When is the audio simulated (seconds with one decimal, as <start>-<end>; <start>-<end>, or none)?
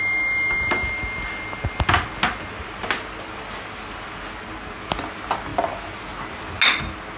none